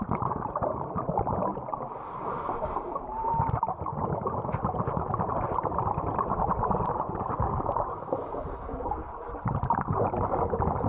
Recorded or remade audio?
recorded